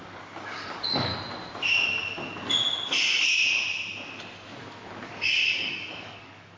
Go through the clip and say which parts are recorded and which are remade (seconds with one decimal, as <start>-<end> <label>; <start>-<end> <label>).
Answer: 0.0-1.1 remade; 1.1-5.1 recorded; 5.1-6.6 remade

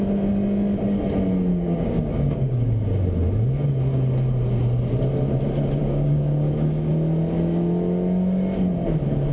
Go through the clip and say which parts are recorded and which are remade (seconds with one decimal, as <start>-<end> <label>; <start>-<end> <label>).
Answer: 0.0-1.5 recorded; 1.5-2.7 remade; 2.7-5.8 recorded; 5.8-6.9 remade; 6.9-9.3 recorded

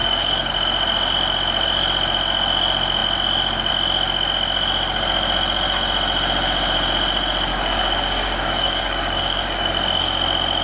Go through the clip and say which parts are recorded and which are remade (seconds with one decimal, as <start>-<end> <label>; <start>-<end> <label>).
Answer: 0.0-0.5 remade; 0.5-7.5 recorded; 7.5-9.7 remade; 9.7-10.6 recorded

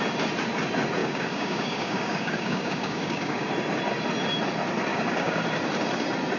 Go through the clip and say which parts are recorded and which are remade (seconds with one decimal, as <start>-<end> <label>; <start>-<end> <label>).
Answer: 0.0-1.0 recorded; 1.0-3.5 remade; 3.5-4.9 recorded; 4.9-5.4 remade; 5.4-6.4 recorded

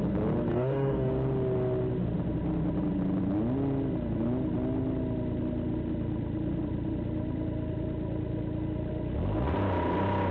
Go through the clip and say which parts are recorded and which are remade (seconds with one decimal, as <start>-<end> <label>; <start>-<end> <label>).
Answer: 0.0-0.5 recorded; 0.5-1.1 remade; 1.1-10.3 recorded

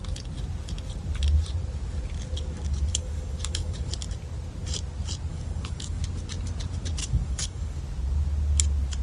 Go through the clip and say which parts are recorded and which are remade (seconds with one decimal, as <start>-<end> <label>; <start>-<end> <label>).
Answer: 0.0-2.9 recorded; 2.9-3.9 remade; 3.9-5.3 recorded; 5.3-6.0 remade; 6.0-7.0 recorded; 7.0-7.8 remade; 7.8-9.0 recorded

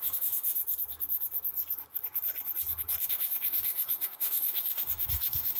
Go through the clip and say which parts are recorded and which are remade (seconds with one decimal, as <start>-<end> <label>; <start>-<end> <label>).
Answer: 0.0-0.6 remade; 0.6-3.0 recorded; 3.0-5.6 remade

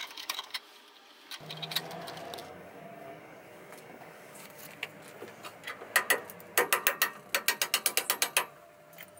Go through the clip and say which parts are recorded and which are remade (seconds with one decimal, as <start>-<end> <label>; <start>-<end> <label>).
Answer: 0.0-0.6 remade; 0.6-2.4 recorded; 2.4-4.6 remade; 4.6-9.2 recorded